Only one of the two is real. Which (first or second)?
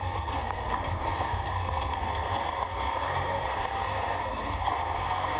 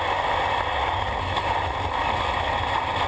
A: second